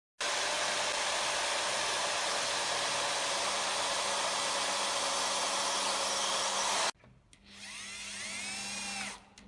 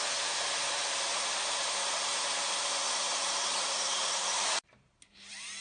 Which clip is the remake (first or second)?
second